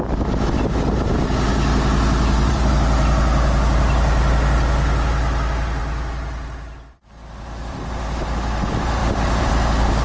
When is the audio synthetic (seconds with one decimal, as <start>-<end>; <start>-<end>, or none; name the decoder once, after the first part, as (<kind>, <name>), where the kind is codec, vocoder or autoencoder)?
1.5-2.7 (vocoder, BigVGAN v2); 5.8-8.0; 9.0-9.5